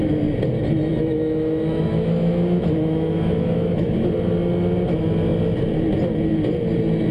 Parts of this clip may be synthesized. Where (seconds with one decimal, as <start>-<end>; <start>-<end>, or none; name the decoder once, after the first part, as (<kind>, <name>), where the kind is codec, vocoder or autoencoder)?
0.9-4.1 (autoencoder, DAC-VAE)

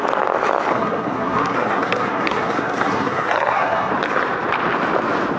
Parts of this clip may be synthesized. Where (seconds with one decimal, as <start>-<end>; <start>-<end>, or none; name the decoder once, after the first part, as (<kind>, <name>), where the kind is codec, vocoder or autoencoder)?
0.7-3.9 (codec, SNAC)

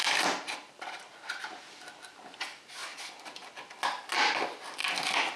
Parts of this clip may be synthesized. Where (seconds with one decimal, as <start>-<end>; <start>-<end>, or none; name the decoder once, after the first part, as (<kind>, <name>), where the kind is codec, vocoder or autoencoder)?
0.0-1.9 (vocoder, BigVGAN v2); 2.8-3.8

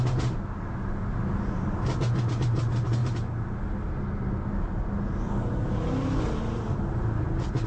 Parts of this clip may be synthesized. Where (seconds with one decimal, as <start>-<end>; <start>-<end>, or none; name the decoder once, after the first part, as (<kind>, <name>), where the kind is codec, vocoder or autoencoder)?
none

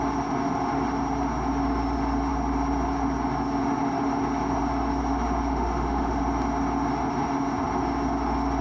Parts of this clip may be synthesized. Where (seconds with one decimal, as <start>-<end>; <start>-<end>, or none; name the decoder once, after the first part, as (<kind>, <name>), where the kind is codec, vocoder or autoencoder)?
5.5-6.2 (autoencoder, DAC-VAE)

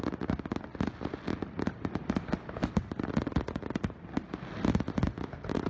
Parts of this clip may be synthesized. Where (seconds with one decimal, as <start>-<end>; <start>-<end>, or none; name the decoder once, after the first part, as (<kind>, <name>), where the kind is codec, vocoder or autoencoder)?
none

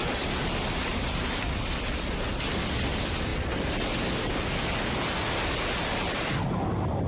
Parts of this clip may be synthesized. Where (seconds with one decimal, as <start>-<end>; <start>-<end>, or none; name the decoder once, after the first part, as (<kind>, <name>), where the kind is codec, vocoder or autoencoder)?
none